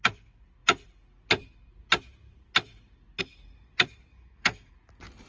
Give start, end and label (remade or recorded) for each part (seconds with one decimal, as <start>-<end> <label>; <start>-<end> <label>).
0.0-4.1 recorded; 4.1-4.7 remade; 4.7-5.3 recorded